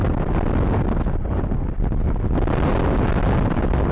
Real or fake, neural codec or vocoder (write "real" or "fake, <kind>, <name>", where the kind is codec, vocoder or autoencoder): real